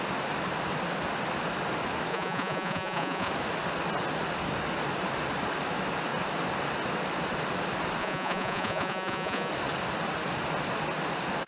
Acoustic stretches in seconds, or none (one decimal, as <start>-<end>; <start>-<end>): 0.0-2.1; 3.3-8.0; 9.5-11.5